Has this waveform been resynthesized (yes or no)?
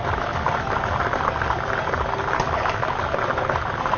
no